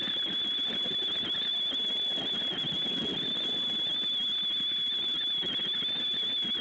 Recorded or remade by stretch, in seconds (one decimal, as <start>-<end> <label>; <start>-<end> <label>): 0.0-6.6 recorded